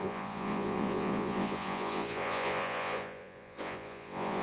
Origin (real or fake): fake